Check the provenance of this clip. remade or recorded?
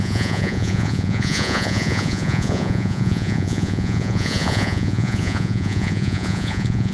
remade